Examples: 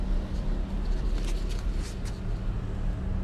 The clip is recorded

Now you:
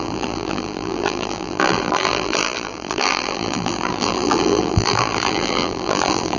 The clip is remade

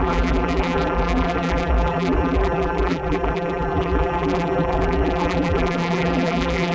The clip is remade